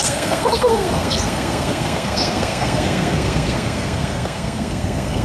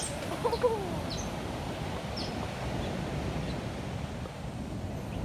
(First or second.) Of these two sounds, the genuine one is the second